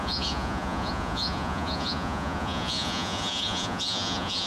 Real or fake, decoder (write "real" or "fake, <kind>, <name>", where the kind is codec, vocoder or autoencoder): fake, vocoder, Vocos